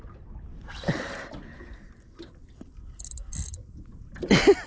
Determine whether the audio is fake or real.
real